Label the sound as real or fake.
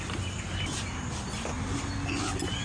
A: real